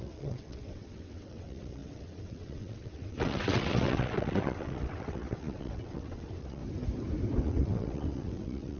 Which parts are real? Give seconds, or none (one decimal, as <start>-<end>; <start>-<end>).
6.6-7.4